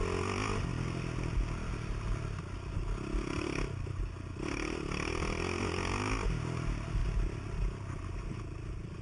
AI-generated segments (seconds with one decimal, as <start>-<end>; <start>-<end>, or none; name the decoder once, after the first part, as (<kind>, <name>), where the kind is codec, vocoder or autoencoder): none